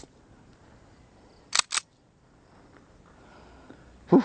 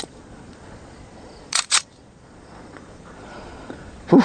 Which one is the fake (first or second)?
second